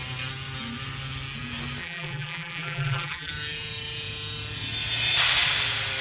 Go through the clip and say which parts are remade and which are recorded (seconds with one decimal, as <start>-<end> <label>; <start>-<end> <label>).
0.0-1.8 recorded; 1.8-3.3 remade; 3.3-6.0 recorded